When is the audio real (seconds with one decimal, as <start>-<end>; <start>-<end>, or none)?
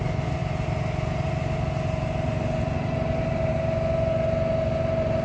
0.0-5.2